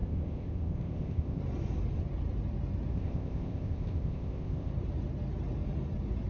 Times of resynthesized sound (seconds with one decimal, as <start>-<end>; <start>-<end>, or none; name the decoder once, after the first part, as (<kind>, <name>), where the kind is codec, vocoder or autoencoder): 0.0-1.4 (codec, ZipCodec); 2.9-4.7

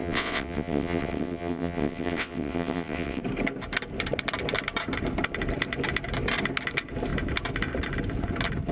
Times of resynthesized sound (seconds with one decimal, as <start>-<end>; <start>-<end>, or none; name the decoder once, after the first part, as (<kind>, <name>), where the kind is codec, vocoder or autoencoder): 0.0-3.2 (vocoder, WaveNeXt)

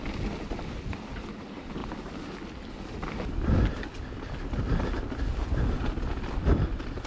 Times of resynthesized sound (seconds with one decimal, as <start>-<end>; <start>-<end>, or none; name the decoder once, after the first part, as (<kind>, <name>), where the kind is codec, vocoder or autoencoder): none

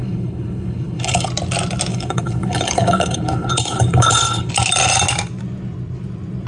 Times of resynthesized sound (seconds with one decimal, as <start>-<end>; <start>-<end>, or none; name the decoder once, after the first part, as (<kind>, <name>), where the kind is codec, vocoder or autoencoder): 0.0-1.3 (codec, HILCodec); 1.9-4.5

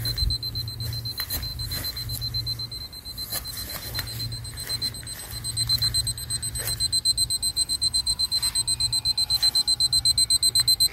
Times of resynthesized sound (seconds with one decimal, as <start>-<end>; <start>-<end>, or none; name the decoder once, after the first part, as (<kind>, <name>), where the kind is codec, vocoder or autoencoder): 7.5-8.4 (codec, DAC)

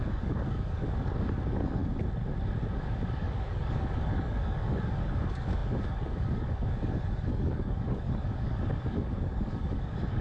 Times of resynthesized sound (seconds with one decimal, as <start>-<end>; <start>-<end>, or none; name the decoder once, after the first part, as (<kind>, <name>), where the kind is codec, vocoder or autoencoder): 0.0-1.8 (codec, DAC); 2.7-10.2